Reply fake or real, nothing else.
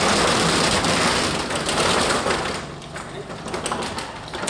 real